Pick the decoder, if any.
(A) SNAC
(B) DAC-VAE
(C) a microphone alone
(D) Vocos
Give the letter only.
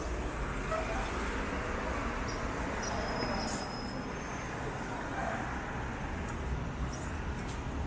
C